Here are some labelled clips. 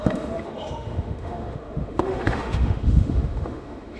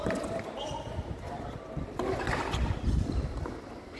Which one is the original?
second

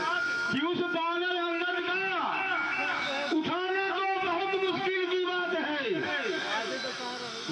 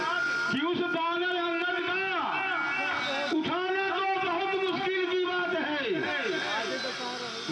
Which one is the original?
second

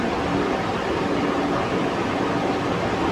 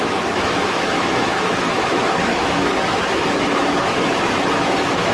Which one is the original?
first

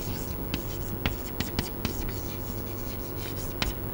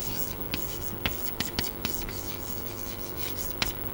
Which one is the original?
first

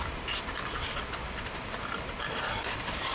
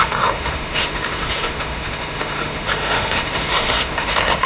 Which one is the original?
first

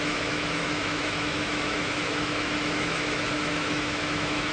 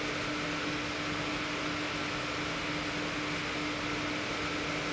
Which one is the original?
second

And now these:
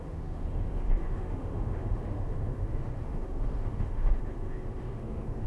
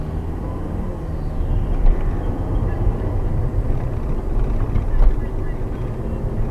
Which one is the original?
second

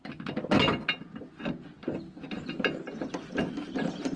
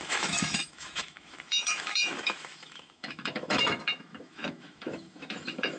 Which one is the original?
first